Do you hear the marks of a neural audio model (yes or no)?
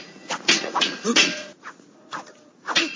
yes